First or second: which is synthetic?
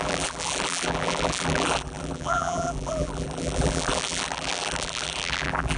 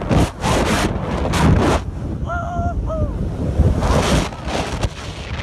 first